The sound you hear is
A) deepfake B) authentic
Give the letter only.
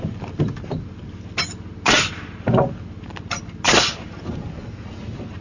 B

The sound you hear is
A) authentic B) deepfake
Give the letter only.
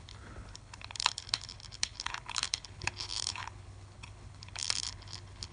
B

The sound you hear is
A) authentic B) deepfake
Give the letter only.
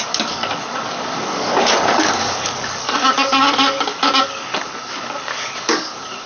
B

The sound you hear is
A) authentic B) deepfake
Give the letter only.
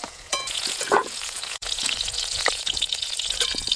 B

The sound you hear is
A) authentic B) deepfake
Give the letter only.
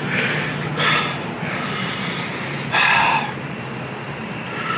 A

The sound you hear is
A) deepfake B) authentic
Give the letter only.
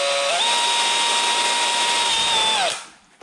B